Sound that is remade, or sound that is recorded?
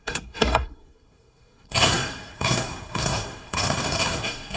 remade